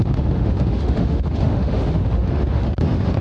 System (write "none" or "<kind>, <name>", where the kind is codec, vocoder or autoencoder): autoencoder, DAC-VAE